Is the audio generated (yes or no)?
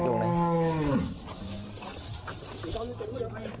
no